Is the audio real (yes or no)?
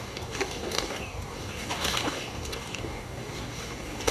no